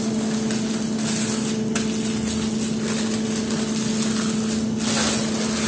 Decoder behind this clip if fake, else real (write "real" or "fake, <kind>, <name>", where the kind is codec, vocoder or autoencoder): real